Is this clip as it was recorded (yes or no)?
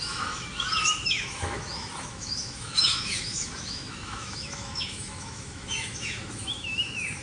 no